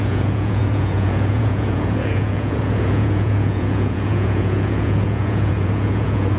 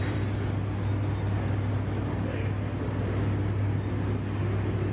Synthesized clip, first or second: first